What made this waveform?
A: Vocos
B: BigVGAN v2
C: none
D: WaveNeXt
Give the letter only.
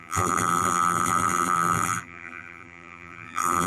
B